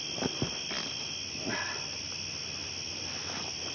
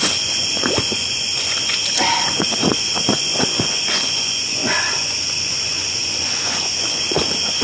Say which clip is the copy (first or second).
second